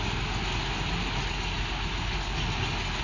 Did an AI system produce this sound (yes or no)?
no